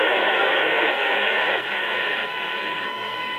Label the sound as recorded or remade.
remade